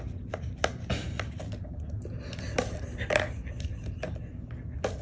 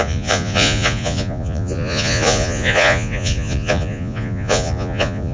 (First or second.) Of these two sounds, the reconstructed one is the second